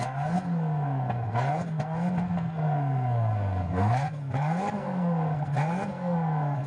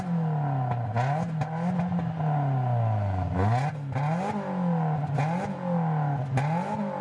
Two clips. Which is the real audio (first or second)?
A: second